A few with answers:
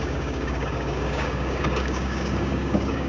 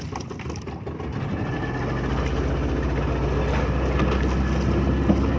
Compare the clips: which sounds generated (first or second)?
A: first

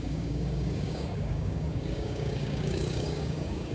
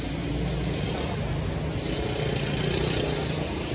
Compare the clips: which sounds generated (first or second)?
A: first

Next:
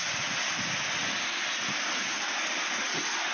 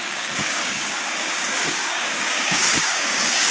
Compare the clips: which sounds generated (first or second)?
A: second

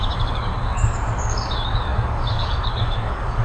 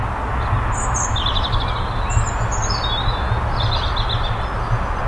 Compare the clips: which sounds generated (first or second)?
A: first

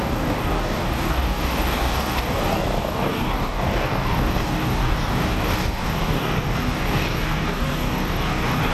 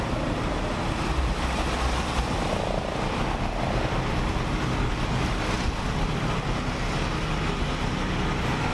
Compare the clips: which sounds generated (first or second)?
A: first